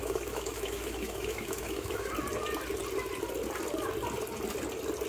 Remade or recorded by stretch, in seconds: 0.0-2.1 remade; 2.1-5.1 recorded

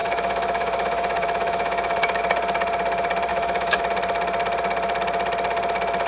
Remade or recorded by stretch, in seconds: 0.0-2.2 remade; 2.2-3.3 recorded; 3.3-3.8 remade; 3.8-6.1 recorded